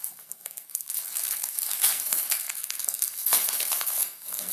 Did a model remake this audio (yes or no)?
yes